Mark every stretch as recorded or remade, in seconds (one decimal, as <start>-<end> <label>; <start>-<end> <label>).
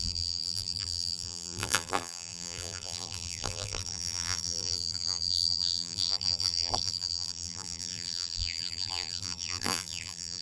0.0-10.4 remade